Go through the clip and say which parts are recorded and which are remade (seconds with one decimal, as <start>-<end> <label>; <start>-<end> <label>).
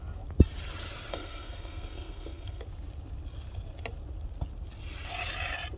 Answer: 0.0-1.1 recorded; 1.1-2.6 remade; 2.6-5.8 recorded